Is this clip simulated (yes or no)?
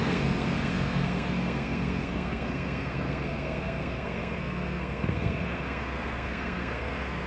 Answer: yes